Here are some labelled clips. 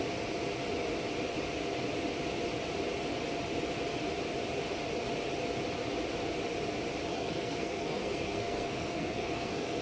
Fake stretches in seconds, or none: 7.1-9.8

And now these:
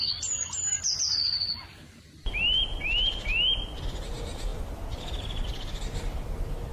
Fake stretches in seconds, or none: none

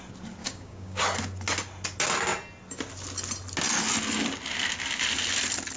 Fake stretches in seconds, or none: 0.4-1.0

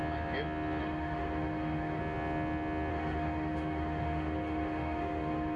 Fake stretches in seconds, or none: 0.8-2.0; 2.9-5.6

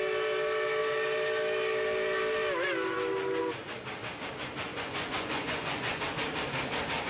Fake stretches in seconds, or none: 4.7-6.0

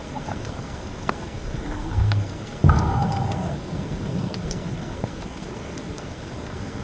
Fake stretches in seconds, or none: 0.0-6.8